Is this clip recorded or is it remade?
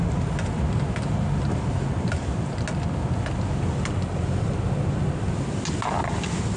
recorded